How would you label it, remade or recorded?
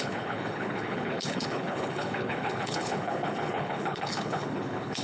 remade